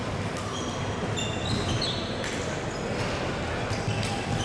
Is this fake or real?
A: real